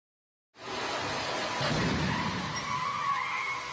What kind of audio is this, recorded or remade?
recorded